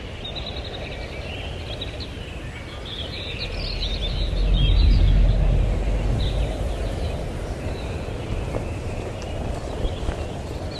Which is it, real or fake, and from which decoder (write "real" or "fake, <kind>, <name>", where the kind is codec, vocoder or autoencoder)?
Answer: real